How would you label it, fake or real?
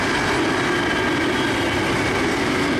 real